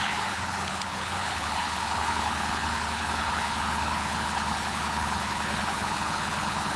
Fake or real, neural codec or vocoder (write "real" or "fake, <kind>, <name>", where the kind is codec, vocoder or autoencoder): fake, codec, HILCodec